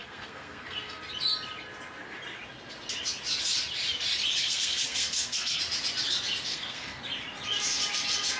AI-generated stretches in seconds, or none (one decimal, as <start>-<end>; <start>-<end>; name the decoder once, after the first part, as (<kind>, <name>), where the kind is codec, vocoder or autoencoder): 0.0-1.0 (codec, SNAC); 4.4-5.6; 6.5-7.0